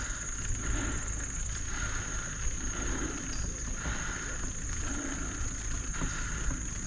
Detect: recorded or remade recorded